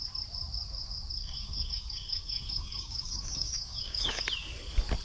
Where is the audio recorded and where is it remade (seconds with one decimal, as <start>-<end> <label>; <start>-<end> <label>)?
0.0-1.2 recorded; 1.2-4.2 remade; 4.2-5.0 recorded